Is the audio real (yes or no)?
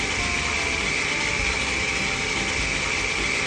yes